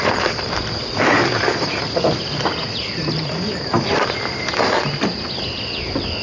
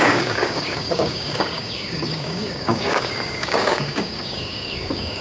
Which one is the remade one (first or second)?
second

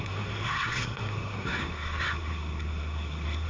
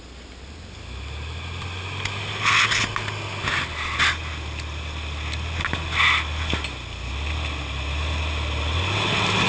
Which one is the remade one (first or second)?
first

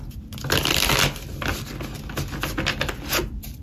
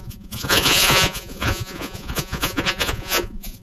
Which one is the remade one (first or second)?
second